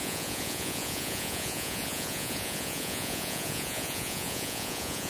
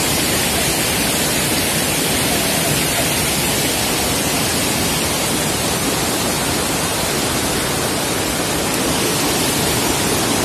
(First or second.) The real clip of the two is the second